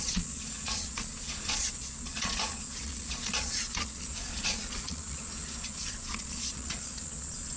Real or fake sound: fake